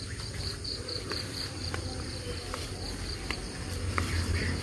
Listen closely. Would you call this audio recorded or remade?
remade